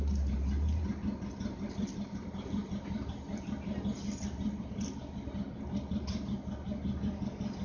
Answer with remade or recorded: recorded